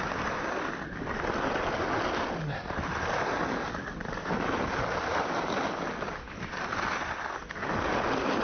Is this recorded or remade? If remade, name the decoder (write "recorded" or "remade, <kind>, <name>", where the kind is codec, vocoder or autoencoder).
recorded